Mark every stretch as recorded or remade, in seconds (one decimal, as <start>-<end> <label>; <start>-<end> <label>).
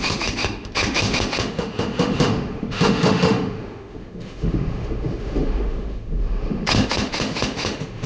0.0-8.1 remade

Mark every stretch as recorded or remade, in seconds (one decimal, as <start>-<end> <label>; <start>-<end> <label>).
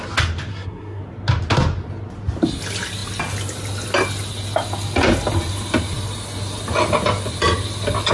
0.0-0.5 recorded; 0.5-1.0 remade; 1.0-8.1 recorded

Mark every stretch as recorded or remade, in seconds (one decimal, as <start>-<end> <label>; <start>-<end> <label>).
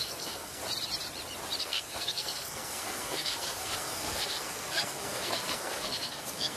0.0-0.6 remade; 0.6-1.6 recorded; 1.6-6.6 remade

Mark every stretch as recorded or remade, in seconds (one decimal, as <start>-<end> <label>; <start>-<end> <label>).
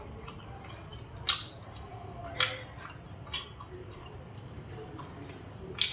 0.0-5.9 recorded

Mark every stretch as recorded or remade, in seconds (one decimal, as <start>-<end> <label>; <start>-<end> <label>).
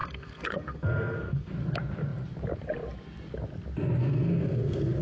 0.0-1.5 remade; 1.5-4.0 recorded; 4.0-5.0 remade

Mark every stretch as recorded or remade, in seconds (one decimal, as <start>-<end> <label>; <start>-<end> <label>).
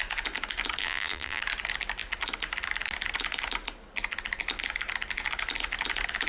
0.0-0.8 recorded; 0.8-1.4 remade; 1.4-6.3 recorded